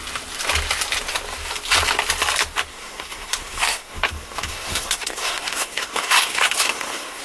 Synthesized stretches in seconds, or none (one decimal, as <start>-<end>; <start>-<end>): 2.7-7.2